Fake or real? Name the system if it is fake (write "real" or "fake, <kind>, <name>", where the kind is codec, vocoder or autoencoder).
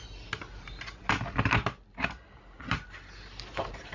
real